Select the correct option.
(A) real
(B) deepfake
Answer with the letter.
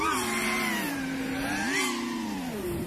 A